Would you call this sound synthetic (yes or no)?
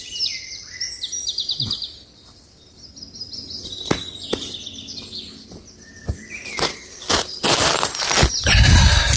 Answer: no